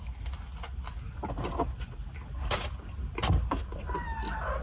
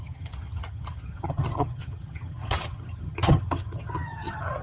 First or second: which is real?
first